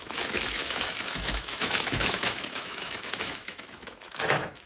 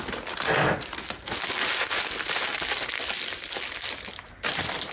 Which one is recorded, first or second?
second